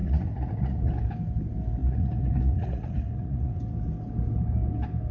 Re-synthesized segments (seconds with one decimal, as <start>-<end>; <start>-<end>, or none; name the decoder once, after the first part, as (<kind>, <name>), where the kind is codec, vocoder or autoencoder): 0.0-0.9 (vocoder, Vocos); 1.8-3.6